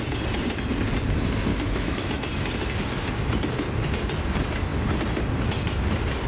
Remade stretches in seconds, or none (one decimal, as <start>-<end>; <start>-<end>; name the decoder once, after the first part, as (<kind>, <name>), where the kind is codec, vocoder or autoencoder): 1.5-2.2 (autoencoder, DAC-VAE)